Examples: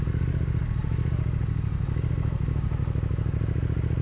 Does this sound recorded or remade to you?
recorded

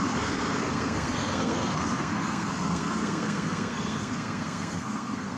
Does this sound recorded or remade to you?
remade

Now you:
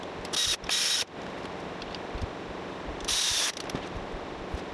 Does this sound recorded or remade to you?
recorded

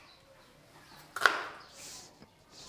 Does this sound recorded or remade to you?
recorded